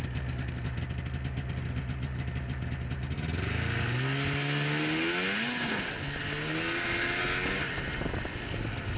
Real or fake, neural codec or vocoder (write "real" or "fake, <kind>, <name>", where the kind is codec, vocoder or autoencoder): real